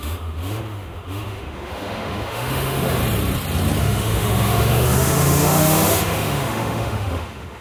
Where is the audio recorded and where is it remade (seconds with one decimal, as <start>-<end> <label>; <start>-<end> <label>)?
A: 0.0-3.0 remade; 3.0-3.8 recorded; 3.8-7.6 remade